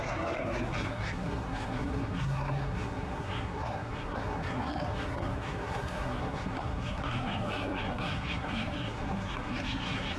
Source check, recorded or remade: remade